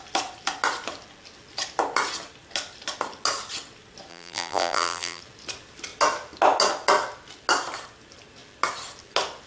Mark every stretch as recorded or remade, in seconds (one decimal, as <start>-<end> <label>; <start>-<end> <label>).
0.0-4.1 recorded; 4.1-5.2 remade; 5.2-9.5 recorded